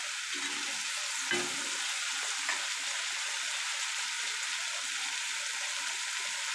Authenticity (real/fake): real